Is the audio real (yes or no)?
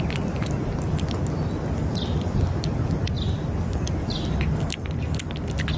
yes